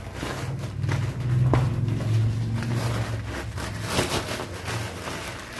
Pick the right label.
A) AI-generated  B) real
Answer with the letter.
B